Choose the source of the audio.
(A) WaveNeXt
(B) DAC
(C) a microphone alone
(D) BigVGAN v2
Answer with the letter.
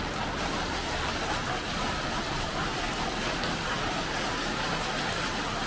C